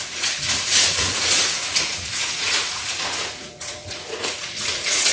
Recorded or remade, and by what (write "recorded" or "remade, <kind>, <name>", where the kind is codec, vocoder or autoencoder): remade, vocoder, Vocos